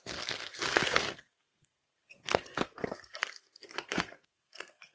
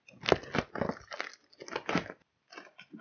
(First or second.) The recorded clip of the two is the second